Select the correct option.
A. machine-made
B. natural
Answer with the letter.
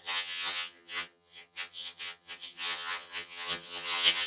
A